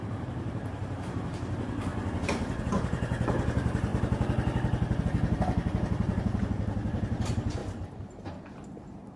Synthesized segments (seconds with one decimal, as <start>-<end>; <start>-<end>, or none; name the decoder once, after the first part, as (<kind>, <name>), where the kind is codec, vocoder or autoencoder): 0.0-1.9 (vocoder, BigVGAN v2); 2.6-3.9; 5.0-9.2